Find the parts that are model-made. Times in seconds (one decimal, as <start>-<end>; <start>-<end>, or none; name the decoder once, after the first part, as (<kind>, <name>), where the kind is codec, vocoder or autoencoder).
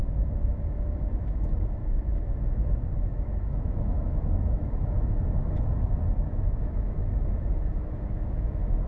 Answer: 0.0-4.9 (autoencoder, DAC-VAE); 5.4-8.9